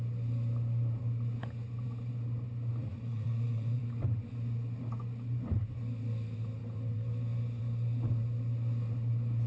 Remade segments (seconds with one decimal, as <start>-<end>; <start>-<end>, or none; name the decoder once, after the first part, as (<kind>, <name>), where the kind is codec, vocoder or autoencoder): 2.8-3.8 (vocoder, Vocos)